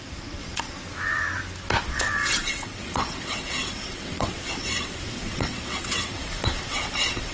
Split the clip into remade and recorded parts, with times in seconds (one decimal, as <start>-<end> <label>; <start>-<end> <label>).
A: 0.0-0.8 remade; 0.8-1.8 recorded; 1.8-7.3 remade